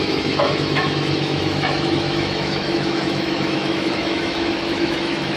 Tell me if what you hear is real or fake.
fake